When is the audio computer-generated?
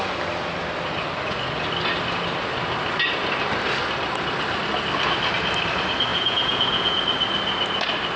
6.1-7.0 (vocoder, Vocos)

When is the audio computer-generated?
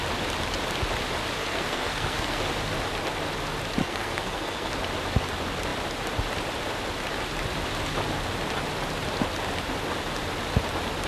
1.4-2.4 (codec, SNAC); 3.8-4.7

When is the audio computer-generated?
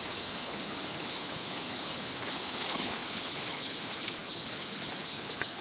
0.0-5.6 (codec, HILCodec)